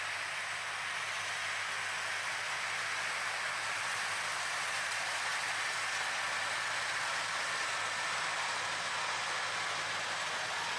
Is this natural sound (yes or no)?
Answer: yes